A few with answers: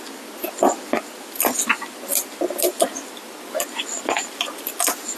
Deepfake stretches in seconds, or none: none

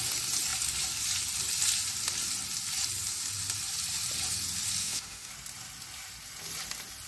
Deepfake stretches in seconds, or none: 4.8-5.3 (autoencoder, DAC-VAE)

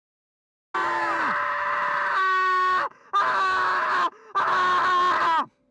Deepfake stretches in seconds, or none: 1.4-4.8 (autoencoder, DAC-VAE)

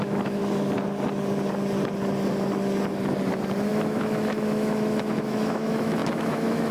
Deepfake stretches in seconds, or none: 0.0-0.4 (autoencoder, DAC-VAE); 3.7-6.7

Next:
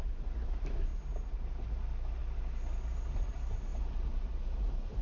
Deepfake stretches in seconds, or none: none

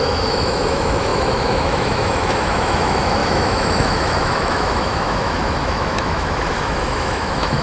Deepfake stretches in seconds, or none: 0.0-7.6 (autoencoder, DAC-VAE)

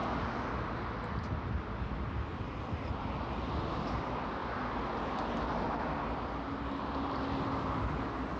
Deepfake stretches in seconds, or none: none